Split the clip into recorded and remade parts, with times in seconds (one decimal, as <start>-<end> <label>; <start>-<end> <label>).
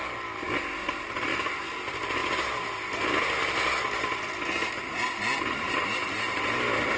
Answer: 0.0-7.0 recorded